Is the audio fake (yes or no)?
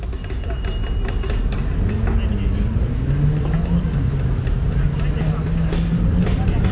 no